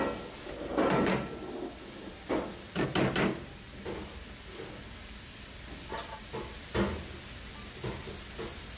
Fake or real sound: real